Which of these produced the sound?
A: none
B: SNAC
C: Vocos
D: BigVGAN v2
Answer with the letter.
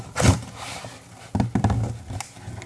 A